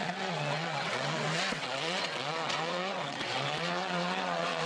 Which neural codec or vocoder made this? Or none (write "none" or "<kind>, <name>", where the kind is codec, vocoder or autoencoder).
vocoder, WaveNeXt